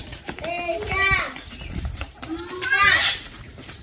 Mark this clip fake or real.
fake